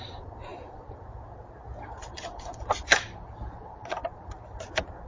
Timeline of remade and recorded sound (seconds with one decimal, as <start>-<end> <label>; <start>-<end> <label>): 0.0-5.1 recorded